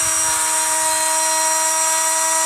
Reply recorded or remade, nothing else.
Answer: recorded